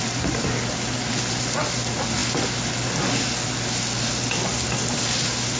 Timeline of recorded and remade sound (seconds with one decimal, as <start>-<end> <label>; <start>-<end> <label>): 0.0-5.6 recorded